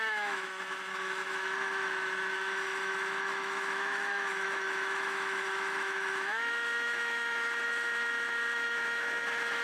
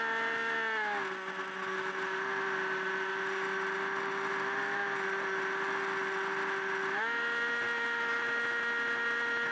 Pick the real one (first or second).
second